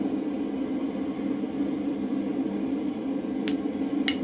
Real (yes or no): yes